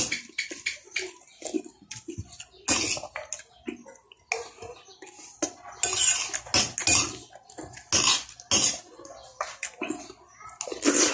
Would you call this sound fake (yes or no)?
no